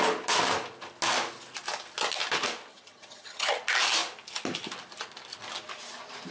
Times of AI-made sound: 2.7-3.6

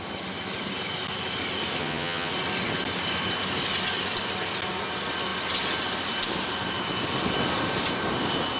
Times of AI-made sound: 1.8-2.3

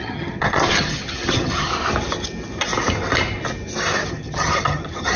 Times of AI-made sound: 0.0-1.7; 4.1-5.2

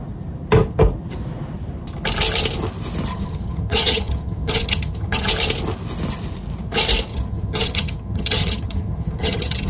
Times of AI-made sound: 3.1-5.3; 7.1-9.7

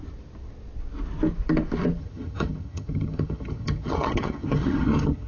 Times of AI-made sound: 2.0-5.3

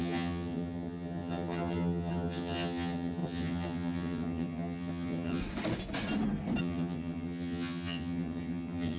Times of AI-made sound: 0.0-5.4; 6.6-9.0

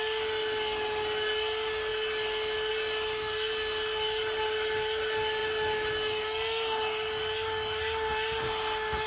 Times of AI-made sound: none